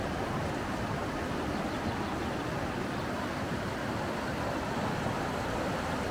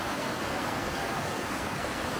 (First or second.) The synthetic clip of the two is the second